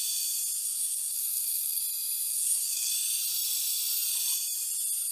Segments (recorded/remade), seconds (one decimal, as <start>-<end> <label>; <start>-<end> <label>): 0.0-0.6 recorded; 0.6-1.8 remade; 1.8-2.3 recorded; 2.3-2.9 remade; 2.9-5.1 recorded